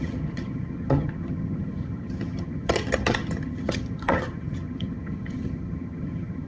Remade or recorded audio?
remade